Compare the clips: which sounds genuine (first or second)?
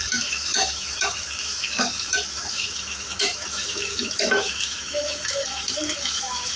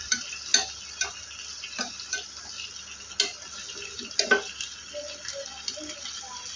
second